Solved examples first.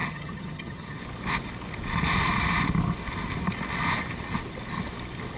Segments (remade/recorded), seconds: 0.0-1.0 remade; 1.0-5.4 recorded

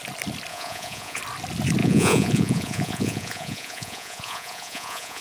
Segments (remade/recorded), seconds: 0.0-0.5 recorded; 0.5-1.2 remade; 1.2-1.8 recorded; 1.8-5.2 remade